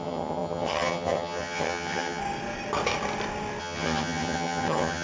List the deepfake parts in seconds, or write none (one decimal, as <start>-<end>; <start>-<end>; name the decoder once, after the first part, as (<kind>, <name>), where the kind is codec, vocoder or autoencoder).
0.0-2.2 (vocoder, HiFi-GAN); 3.6-5.0